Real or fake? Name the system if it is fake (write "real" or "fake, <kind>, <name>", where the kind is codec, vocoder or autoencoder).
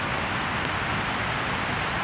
real